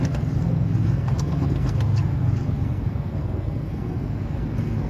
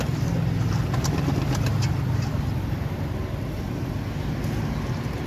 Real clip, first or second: second